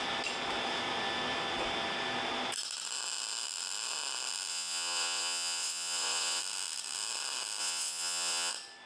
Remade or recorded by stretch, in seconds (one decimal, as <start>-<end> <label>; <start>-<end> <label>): 0.0-4.5 recorded; 4.5-6.4 remade; 6.4-7.6 recorded; 7.6-8.5 remade; 8.5-8.9 recorded